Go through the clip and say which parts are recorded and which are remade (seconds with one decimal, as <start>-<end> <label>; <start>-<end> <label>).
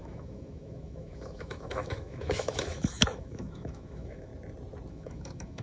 0.0-4.3 remade; 4.3-4.9 recorded; 4.9-5.6 remade